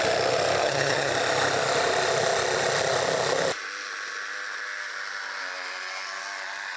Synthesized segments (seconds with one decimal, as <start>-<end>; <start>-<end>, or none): 0.6-1.1